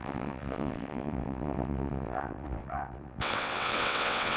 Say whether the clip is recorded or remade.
remade